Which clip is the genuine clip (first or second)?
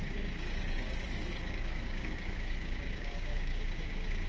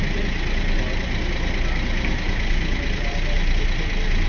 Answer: second